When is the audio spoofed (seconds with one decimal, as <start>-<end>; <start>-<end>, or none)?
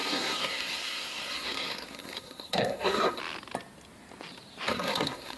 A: 0.0-3.2; 4.7-5.4